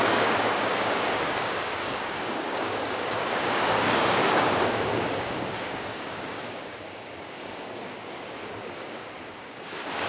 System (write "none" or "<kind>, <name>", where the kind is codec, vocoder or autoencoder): codec, DAC